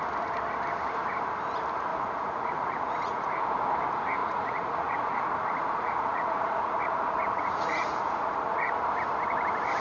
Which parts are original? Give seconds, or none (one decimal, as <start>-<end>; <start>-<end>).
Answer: 0.0-1.9; 3.4-4.2; 8.8-9.8